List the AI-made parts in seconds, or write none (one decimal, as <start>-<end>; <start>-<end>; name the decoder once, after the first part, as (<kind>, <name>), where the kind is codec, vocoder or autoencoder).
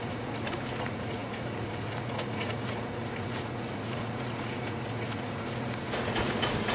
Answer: 0.0-6.7 (vocoder, Vocos)